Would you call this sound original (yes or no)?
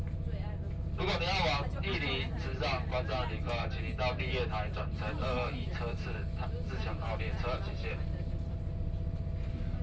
yes